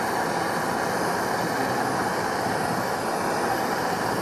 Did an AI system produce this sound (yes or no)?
no